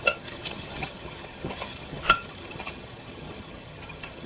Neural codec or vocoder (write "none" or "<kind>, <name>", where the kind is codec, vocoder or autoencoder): vocoder, HiFi-GAN